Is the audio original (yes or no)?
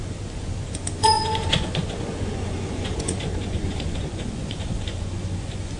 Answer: no